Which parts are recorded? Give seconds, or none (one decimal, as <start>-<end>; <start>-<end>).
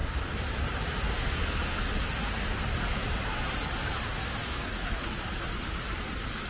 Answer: 0.0-4.4; 5.4-6.5